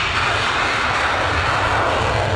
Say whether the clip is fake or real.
real